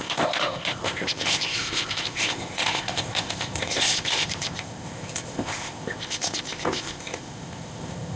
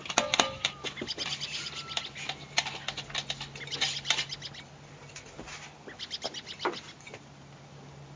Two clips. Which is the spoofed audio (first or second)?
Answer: first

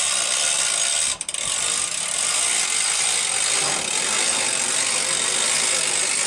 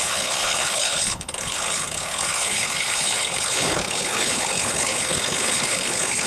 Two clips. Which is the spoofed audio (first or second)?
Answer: second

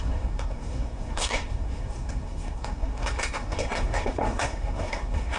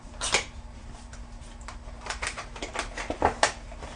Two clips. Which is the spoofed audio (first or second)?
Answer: first